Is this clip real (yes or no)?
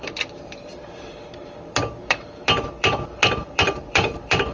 no